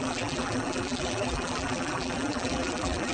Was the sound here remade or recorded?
remade